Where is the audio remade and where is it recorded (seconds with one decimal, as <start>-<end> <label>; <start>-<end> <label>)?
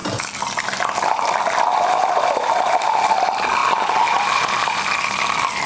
0.0-2.1 recorded; 2.1-3.6 remade; 3.6-4.5 recorded; 4.5-5.7 remade